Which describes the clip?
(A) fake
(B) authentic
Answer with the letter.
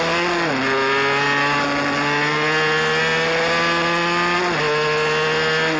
B